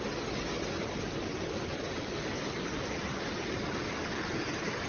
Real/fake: real